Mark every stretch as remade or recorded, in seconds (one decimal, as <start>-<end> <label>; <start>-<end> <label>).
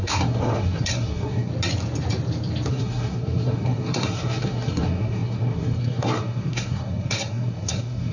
0.0-1.5 remade; 1.5-2.7 recorded; 2.7-8.1 remade